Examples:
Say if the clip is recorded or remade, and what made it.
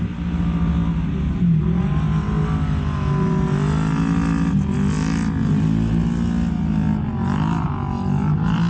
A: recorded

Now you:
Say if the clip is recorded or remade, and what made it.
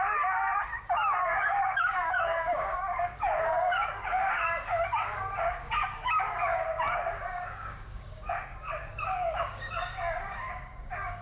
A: remade, codec, DAC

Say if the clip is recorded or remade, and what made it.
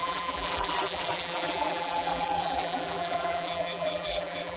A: remade, vocoder, BigVGAN v2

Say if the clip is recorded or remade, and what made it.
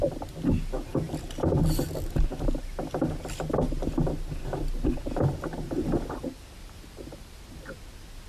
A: recorded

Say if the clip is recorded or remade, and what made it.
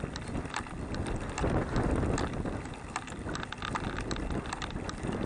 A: recorded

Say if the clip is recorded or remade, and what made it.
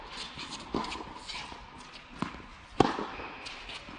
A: recorded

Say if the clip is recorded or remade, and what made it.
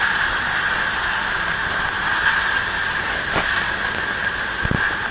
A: recorded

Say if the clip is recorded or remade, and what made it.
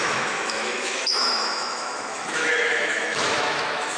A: remade, autoencoder, DAC-VAE